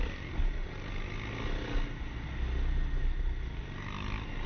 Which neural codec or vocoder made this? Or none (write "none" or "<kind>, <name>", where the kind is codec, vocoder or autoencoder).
none